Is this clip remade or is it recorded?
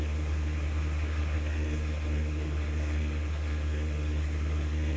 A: remade